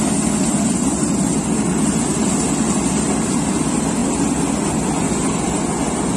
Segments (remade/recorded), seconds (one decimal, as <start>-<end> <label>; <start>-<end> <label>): 0.0-6.2 recorded